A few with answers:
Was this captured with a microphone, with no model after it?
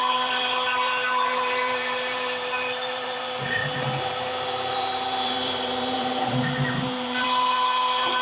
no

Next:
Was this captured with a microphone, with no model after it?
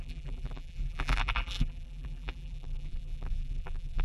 no